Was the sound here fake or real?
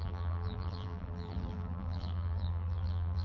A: fake